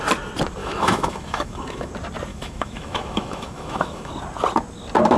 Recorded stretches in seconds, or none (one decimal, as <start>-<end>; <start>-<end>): 0.0-0.6; 1.9-2.3; 4.1-5.2